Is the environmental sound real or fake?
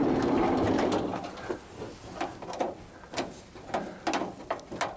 real